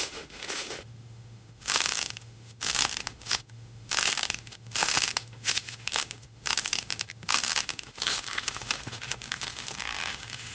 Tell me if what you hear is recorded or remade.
remade